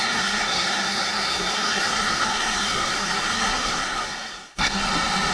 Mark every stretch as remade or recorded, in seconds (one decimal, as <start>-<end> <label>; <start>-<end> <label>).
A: 0.0-4.8 remade; 4.8-5.3 recorded